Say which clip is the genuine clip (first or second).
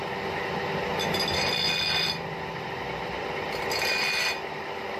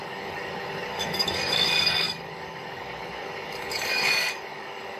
first